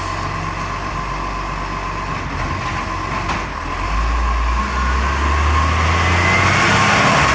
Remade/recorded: recorded